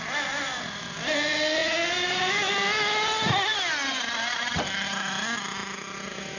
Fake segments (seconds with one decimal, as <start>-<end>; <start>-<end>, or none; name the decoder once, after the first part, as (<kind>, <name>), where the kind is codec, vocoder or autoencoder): none

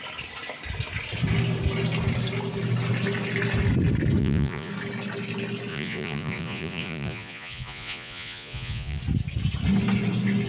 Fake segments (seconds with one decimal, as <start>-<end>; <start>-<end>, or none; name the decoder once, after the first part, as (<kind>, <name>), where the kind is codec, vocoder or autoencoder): 4.2-4.7 (vocoder, Vocos); 5.7-9.0

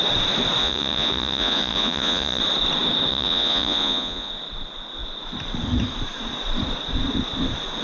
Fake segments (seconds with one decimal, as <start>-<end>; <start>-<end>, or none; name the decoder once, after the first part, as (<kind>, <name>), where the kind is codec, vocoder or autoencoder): 0.6-2.4 (vocoder, Vocos); 3.1-4.3

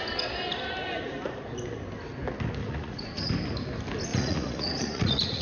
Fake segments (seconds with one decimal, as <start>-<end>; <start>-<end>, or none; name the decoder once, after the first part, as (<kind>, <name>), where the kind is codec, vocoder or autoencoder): 2.6-3.3 (vocoder, Vocos); 4.1-5.4

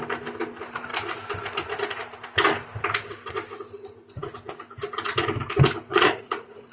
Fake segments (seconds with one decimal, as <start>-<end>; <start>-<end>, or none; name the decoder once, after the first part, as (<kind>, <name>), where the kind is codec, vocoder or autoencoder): 5.9-6.7 (vocoder, Vocos)